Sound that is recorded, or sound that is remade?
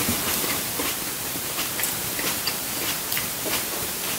remade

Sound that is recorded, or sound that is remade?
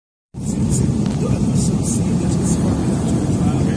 remade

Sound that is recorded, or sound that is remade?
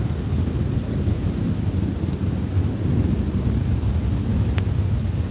recorded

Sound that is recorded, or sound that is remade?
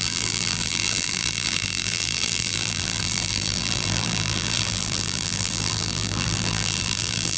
remade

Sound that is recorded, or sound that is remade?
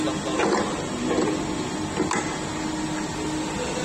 recorded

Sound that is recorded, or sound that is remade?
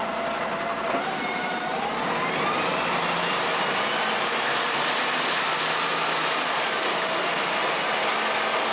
recorded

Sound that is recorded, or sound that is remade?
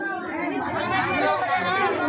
recorded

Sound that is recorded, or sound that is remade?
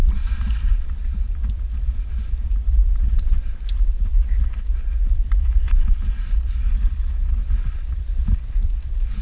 remade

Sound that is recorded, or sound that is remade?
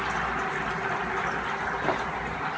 recorded